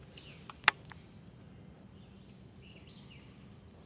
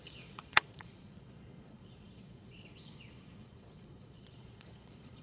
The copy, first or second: second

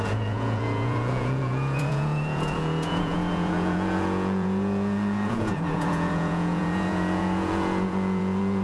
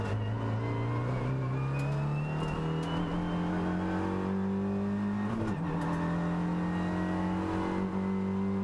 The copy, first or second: first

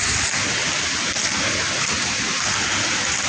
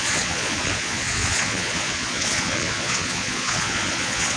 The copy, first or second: second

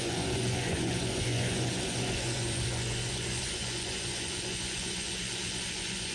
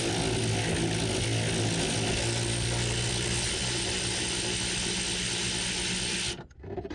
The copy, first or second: first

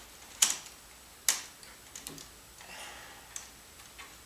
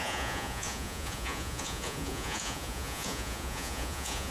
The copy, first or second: second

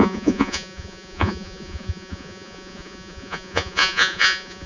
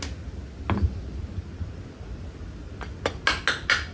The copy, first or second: first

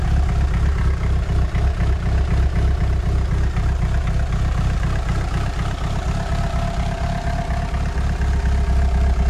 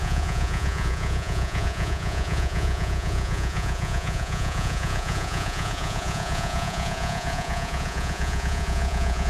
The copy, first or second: second